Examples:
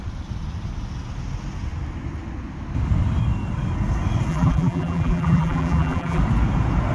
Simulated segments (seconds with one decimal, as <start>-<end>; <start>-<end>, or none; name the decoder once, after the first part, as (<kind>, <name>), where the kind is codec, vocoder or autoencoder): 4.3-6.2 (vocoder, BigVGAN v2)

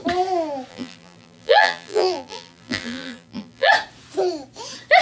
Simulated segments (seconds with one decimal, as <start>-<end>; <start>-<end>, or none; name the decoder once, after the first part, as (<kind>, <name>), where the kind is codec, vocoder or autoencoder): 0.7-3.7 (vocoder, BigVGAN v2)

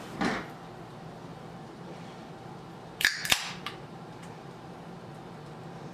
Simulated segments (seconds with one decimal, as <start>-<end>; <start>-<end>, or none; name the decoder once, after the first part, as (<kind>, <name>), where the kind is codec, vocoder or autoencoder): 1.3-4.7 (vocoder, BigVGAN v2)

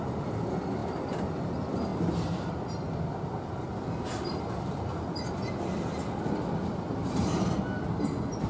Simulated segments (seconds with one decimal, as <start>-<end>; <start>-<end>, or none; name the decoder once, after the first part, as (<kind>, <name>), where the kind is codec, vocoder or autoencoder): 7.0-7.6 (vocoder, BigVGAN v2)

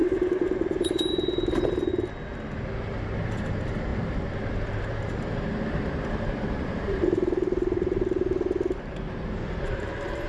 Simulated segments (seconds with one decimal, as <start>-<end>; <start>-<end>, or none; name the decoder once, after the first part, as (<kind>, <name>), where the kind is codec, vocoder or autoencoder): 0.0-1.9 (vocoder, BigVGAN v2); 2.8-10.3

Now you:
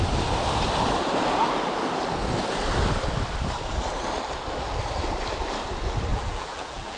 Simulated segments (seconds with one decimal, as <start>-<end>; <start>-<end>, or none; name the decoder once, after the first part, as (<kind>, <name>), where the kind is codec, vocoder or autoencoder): 6.1-7.0 (vocoder, BigVGAN v2)